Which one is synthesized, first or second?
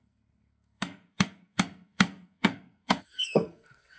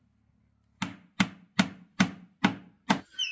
first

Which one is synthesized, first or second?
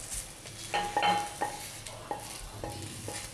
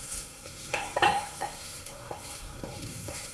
second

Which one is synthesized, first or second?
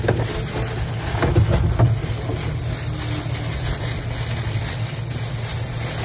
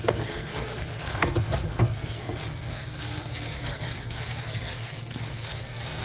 second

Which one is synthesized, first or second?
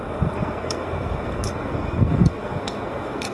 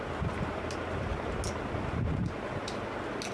first